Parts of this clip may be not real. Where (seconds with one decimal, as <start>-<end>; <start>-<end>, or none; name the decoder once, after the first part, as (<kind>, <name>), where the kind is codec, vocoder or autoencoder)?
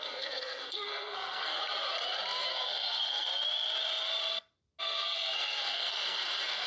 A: 0.0-1.6 (codec, SNAC); 2.5-3.3; 4.8-6.7